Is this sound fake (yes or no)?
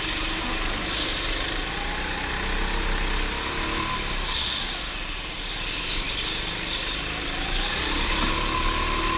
no